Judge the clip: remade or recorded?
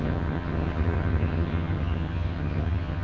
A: remade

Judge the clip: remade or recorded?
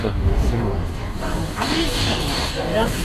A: remade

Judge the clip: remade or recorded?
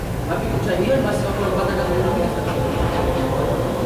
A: recorded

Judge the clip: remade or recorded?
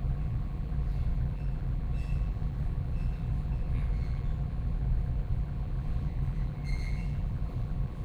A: remade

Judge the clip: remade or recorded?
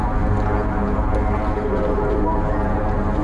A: recorded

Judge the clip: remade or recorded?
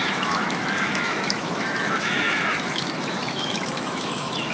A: remade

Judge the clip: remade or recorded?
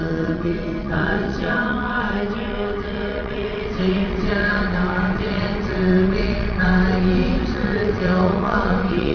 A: remade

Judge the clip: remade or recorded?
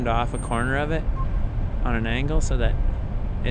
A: recorded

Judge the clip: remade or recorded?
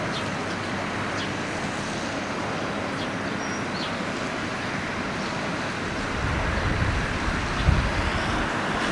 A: recorded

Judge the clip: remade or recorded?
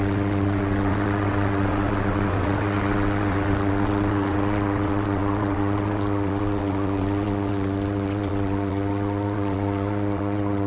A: remade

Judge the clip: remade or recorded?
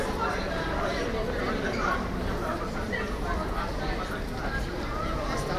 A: recorded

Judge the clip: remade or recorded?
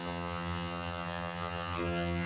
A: remade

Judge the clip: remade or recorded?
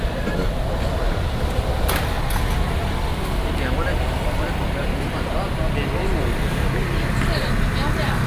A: recorded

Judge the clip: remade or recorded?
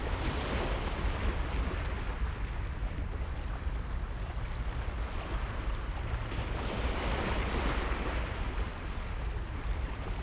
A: recorded